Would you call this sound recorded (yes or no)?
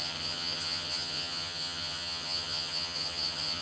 no